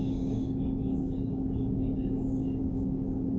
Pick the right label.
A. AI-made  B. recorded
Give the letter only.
A